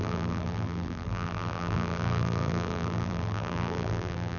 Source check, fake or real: fake